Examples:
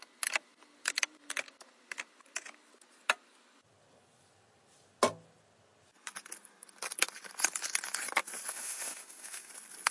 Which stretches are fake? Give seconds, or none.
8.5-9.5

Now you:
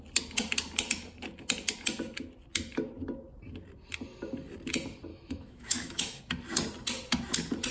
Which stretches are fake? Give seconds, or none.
5.1-6.2

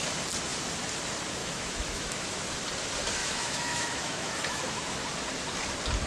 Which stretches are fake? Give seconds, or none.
1.4-2.4; 3.2-5.0

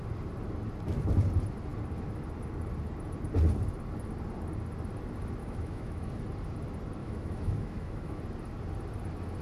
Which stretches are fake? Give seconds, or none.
5.4-6.2; 7.0-8.2